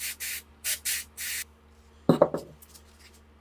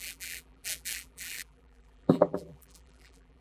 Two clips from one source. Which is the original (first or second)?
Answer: first